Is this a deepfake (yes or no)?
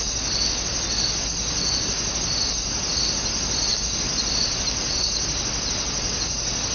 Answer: no